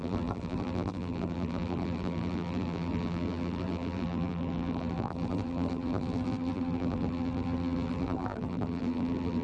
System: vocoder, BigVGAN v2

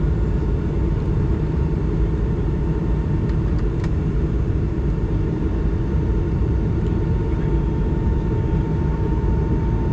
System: vocoder, BigVGAN v2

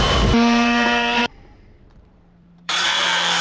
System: vocoder, BigVGAN v2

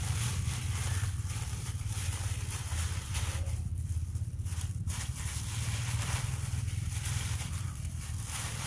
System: vocoder, BigVGAN v2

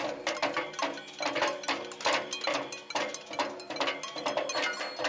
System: none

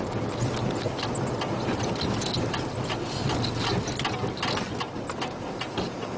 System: none